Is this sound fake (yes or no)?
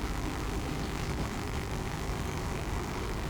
yes